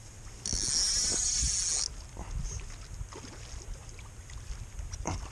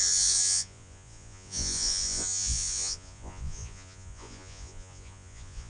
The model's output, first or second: second